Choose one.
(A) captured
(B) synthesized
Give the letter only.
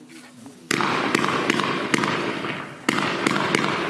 A